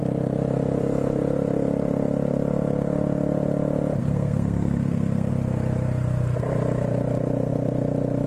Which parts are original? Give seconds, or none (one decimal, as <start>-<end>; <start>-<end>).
0.0-4.0; 5.3-8.3